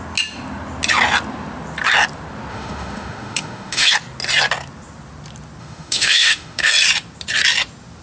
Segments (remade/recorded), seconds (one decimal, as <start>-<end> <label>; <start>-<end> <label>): 0.0-2.5 recorded; 2.5-3.9 remade; 3.9-5.6 recorded; 5.6-6.7 remade; 6.7-8.0 recorded